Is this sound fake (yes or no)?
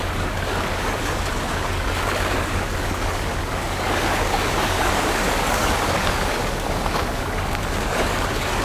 yes